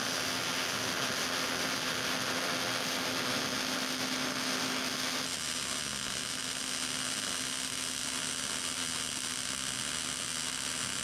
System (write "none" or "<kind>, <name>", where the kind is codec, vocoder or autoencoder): none